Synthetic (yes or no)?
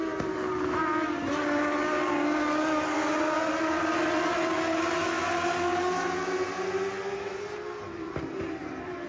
no